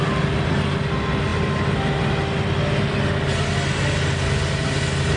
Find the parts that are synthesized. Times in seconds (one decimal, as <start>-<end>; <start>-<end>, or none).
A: none